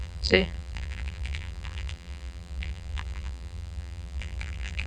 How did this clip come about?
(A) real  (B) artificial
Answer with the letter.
B